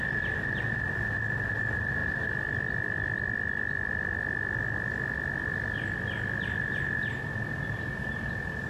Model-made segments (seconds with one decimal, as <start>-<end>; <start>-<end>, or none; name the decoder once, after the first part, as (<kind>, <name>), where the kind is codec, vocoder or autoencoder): 0.0-2.0 (vocoder, BigVGAN v2); 7.2-8.7